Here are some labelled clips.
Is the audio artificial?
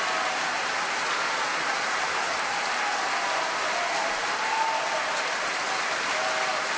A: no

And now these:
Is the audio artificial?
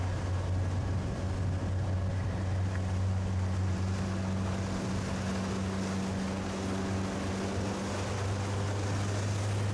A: no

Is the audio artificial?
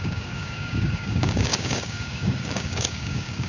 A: yes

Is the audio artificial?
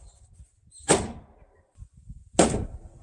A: no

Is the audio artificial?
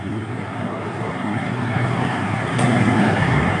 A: yes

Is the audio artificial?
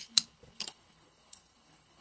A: yes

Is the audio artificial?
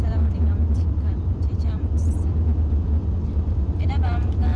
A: yes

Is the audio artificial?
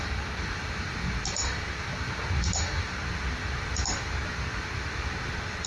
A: no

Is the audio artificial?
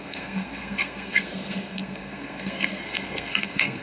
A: yes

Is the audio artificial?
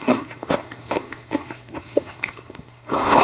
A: yes